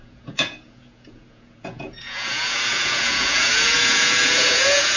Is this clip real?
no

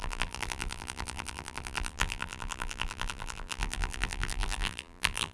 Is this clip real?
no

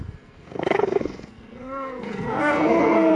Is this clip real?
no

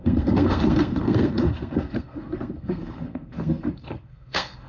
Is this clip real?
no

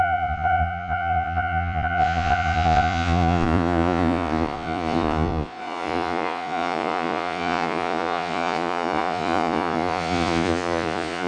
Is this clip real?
no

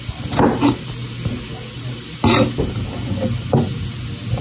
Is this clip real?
yes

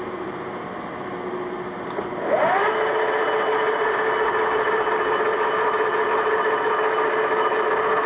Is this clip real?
yes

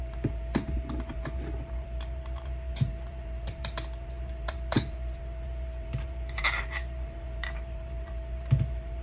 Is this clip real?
no